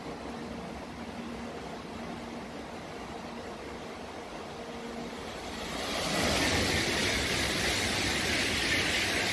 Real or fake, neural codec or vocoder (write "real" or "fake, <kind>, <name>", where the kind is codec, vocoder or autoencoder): real